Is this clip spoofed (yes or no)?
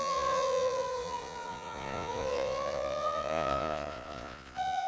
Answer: yes